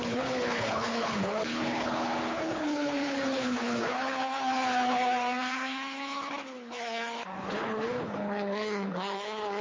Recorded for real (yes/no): no